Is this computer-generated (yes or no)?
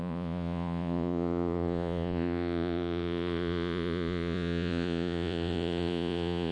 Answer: yes